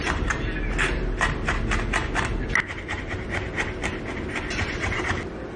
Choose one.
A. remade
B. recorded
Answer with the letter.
B